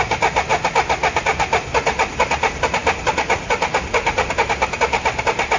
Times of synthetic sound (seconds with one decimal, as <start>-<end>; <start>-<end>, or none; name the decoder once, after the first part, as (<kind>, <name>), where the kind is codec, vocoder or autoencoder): none